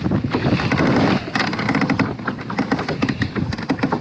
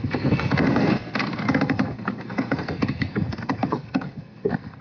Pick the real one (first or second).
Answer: first